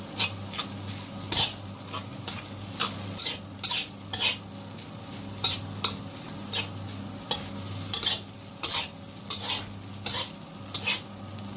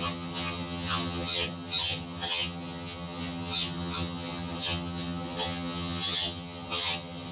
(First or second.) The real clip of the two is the first